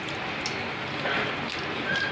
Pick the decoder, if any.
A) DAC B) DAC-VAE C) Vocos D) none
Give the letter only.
D